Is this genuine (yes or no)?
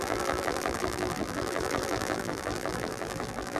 no